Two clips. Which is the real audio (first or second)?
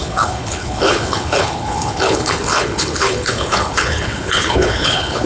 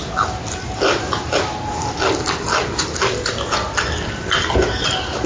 second